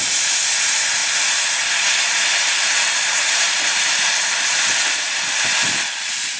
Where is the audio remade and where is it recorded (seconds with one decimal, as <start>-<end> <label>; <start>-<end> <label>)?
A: 0.0-2.3 recorded; 2.3-5.2 remade; 5.2-6.4 recorded